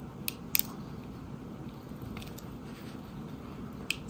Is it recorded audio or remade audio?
recorded